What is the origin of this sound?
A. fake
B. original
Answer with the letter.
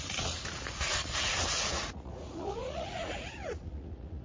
A